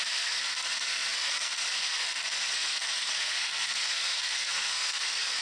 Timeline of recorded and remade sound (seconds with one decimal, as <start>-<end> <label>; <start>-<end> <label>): 0.0-5.4 remade